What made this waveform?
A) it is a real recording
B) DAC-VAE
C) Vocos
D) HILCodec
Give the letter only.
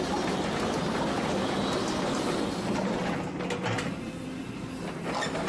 A